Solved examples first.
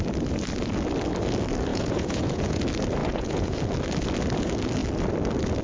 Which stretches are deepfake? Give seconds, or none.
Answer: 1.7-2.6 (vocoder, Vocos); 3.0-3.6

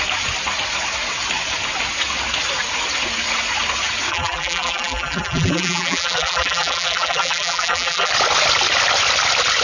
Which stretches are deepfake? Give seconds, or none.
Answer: 4.1-8.1 (vocoder, BigVGAN v2)

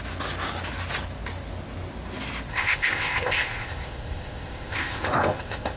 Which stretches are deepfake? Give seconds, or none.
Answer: 2.5-5.8 (codec, ZipCodec)